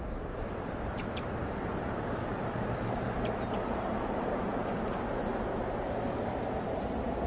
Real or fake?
fake